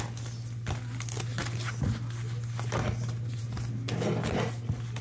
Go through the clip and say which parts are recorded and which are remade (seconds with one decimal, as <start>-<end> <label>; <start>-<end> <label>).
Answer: 0.0-5.0 recorded